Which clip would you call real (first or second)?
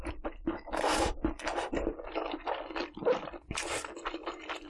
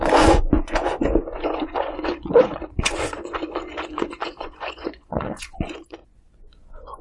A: first